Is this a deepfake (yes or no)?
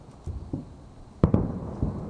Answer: no